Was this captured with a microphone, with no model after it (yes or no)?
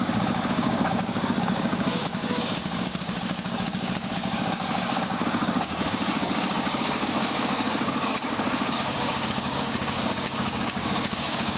no